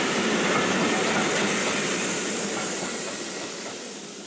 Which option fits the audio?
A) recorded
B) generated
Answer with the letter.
A